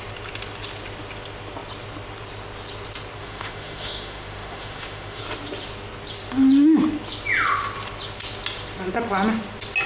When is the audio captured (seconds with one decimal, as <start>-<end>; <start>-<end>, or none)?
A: 0.0-3.2; 5.2-9.9